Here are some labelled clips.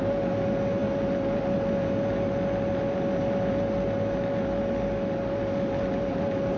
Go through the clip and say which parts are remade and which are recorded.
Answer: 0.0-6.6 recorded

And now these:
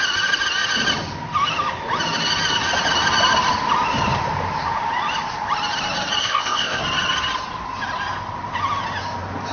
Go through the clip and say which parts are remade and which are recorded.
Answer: 0.0-6.2 recorded; 6.2-6.8 remade; 6.8-9.5 recorded

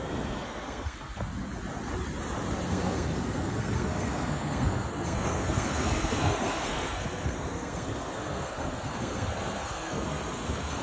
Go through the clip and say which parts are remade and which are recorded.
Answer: 0.0-1.3 remade; 1.3-2.7 recorded; 2.7-10.8 remade

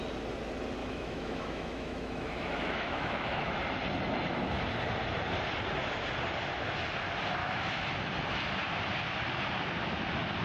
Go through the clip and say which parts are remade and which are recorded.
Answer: 0.0-0.8 recorded; 0.8-3.6 remade; 3.6-7.4 recorded; 7.4-7.9 remade; 7.9-10.4 recorded

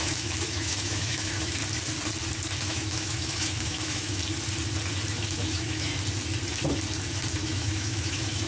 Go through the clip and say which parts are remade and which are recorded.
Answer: 0.0-1.6 remade; 1.6-2.6 recorded; 2.6-4.2 remade; 4.2-5.1 recorded; 5.1-5.9 remade; 5.9-7.4 recorded; 7.4-8.5 remade

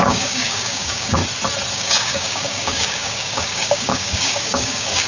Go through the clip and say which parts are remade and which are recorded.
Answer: 0.0-1.2 remade; 1.2-1.7 recorded; 1.7-5.1 remade

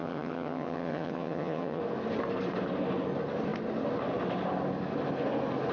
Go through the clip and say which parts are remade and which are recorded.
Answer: 0.0-1.8 remade; 1.8-5.7 recorded

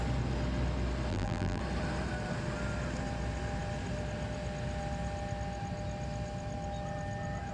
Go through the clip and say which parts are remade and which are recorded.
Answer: 0.0-1.1 recorded; 1.1-1.6 remade; 1.6-7.5 recorded